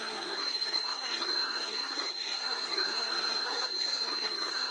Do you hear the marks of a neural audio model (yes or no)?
yes